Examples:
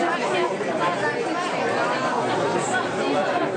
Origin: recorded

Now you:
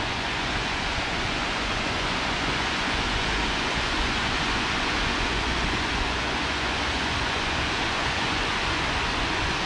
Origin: remade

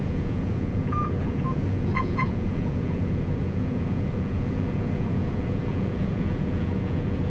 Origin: remade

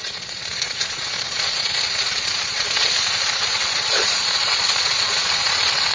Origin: remade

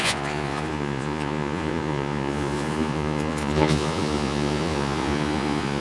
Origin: remade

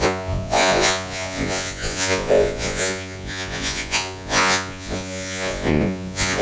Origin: remade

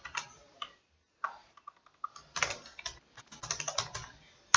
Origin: recorded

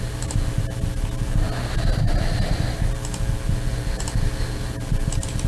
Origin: recorded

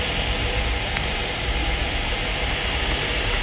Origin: recorded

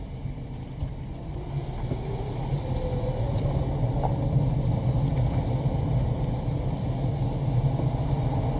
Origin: recorded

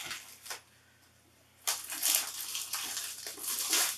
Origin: recorded